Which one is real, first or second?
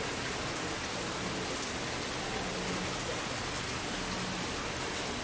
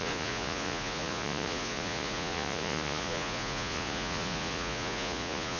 first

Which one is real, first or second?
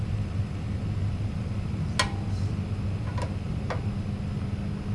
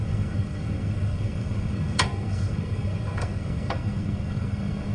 first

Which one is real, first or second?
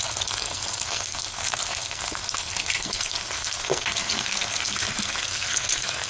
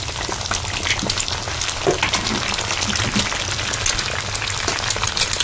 second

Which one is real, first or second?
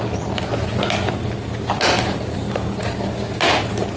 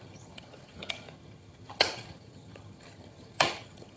first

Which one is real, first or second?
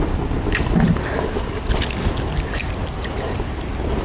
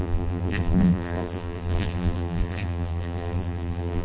first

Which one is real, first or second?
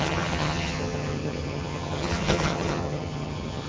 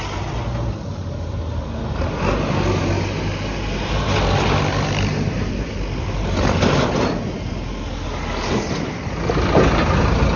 second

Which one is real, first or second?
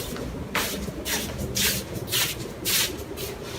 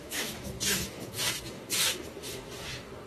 first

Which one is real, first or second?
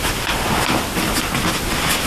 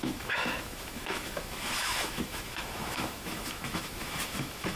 first